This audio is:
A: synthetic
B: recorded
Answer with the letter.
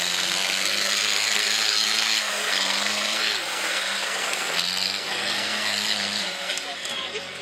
A